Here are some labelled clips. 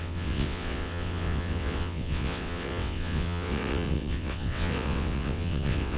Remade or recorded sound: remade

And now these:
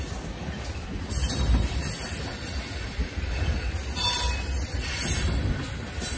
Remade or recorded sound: recorded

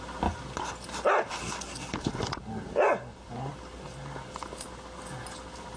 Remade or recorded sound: recorded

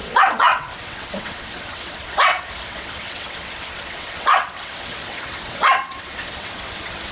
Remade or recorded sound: remade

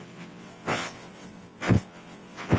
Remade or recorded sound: remade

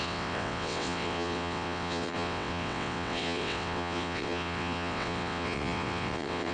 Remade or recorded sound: remade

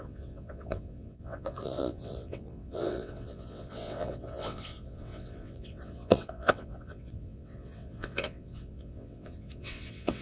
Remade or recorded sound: remade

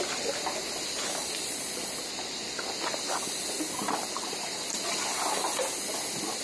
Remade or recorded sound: recorded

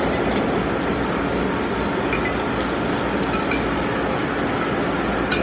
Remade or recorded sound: recorded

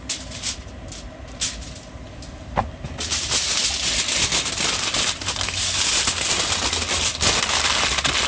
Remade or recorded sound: recorded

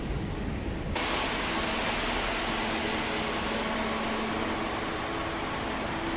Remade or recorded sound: recorded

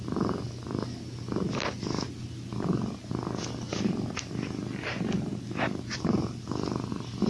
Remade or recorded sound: recorded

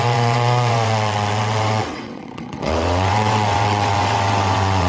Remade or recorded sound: remade